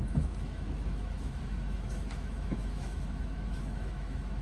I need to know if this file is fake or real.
fake